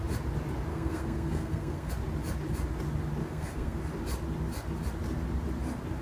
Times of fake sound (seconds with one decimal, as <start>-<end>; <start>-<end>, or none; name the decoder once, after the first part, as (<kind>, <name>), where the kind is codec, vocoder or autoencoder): 0.7-1.9 (codec, SNAC); 3.2-3.8